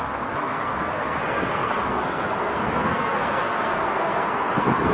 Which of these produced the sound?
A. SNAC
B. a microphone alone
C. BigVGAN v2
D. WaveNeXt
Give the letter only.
A